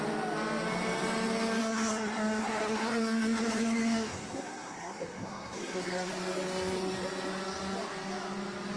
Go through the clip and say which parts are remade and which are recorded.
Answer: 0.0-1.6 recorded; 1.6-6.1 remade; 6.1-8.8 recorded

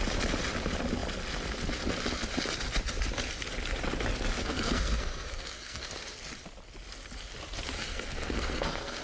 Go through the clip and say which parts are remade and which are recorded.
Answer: 0.0-4.4 recorded; 4.4-5.9 remade; 5.9-7.8 recorded; 7.8-9.0 remade

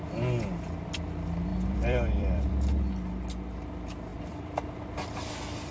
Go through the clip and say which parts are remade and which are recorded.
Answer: 0.0-1.5 recorded; 1.5-2.5 remade; 2.5-4.1 recorded; 4.1-4.8 remade; 4.8-5.7 recorded

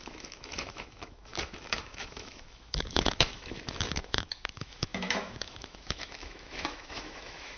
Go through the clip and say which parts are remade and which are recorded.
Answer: 0.0-7.6 remade

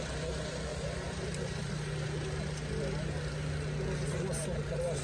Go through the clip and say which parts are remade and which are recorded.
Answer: 0.0-0.7 recorded; 0.7-1.7 remade; 1.7-5.0 recorded

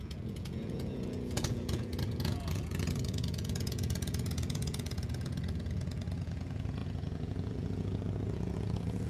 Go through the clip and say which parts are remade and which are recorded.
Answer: 0.0-9.1 remade

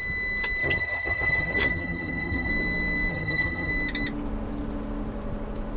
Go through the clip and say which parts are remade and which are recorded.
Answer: 0.0-0.6 recorded; 0.6-2.5 remade; 2.5-3.1 recorded; 3.1-3.7 remade; 3.7-5.8 recorded

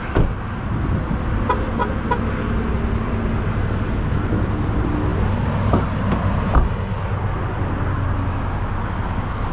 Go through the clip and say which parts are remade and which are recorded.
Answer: 0.0-9.5 recorded